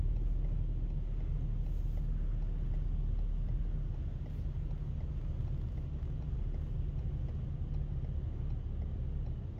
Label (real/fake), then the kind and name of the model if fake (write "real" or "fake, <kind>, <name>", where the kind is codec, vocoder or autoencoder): real